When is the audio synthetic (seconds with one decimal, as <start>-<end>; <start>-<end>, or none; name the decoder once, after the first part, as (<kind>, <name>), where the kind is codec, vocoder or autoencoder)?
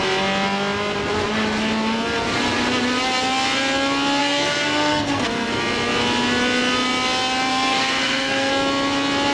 4.2-5.6 (codec, SNAC); 7.5-8.5